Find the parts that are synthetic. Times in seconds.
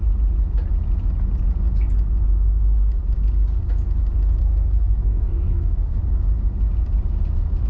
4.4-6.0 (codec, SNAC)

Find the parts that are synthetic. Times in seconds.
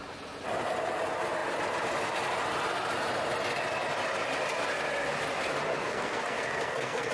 5.8-7.1 (codec, SNAC)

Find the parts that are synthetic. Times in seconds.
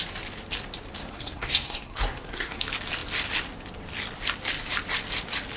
1.0-2.6 (codec, SNAC)